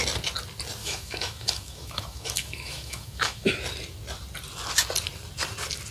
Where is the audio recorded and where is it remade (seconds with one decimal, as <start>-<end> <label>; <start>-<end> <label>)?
0.0-0.8 recorded; 0.8-3.5 remade; 3.5-5.9 recorded